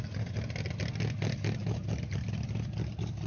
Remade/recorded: recorded